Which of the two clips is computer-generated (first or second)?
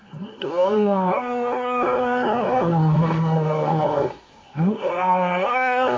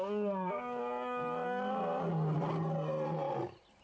first